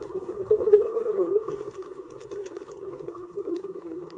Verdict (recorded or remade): remade